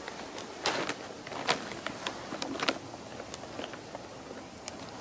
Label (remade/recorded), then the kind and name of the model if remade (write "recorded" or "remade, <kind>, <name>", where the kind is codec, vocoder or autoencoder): recorded